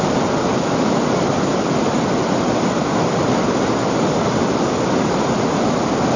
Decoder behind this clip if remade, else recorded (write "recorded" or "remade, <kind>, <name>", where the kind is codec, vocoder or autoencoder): recorded